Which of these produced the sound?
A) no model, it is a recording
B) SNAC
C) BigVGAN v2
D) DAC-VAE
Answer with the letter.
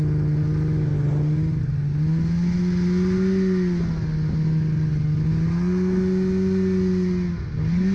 A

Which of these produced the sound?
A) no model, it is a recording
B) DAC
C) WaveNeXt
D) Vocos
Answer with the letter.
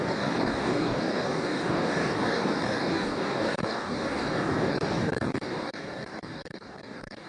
B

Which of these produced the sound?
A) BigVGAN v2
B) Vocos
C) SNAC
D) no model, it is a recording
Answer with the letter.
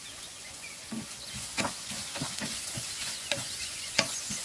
B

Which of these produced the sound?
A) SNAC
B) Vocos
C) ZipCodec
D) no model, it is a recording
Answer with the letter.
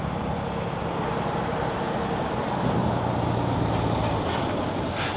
D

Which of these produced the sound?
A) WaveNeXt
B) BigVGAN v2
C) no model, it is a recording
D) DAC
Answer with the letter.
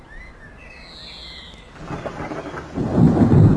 C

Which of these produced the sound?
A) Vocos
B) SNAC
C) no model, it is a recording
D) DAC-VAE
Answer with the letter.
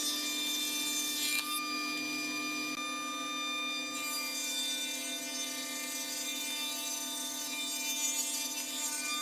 C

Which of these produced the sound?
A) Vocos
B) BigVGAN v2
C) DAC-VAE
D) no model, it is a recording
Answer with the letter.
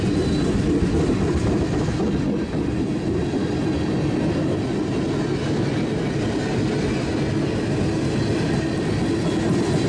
D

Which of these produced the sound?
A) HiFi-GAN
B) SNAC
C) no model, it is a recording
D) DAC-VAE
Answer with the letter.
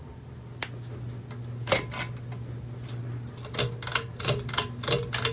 C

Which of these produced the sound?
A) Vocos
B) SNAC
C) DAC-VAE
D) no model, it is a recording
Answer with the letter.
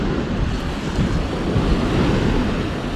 D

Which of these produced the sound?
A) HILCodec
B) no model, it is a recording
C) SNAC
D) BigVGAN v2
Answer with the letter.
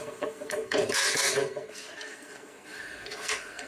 C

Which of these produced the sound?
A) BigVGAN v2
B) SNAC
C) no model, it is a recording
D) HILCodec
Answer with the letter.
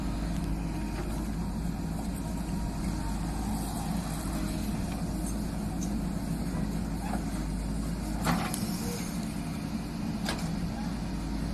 C